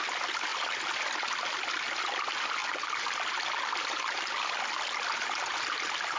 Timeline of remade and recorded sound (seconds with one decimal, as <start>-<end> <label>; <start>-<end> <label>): 0.0-6.2 recorded